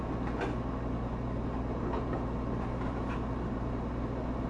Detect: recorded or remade recorded